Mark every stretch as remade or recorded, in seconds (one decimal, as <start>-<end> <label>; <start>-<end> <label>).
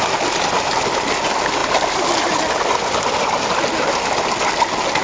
0.0-5.0 recorded